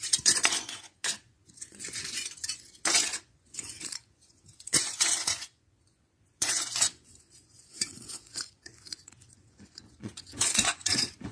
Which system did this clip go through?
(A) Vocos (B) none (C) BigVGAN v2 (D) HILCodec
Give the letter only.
A